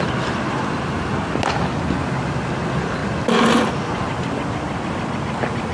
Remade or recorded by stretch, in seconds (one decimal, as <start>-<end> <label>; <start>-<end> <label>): 0.0-5.7 recorded